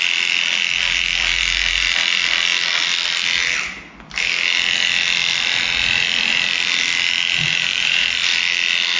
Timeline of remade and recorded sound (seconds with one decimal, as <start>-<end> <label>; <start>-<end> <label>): 0.0-7.7 recorded; 7.7-8.4 remade; 8.4-9.0 recorded